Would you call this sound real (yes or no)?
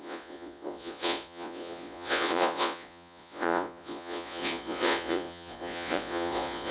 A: no